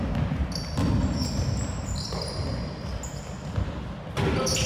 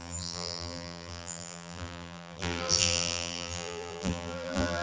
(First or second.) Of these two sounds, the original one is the first